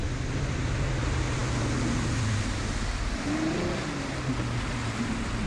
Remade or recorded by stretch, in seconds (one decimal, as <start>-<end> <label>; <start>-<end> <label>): 0.0-5.5 recorded